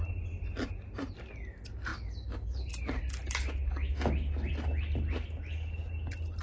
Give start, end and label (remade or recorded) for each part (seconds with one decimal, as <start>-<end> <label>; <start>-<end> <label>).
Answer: 0.0-6.4 recorded